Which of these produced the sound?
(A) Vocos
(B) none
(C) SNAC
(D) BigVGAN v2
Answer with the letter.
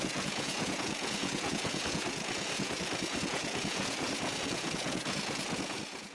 A